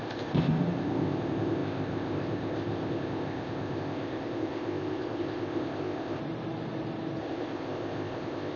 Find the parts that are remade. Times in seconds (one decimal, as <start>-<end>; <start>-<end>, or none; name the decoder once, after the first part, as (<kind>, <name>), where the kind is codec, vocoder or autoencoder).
0.0-6.2 (codec, ZipCodec); 7.2-8.6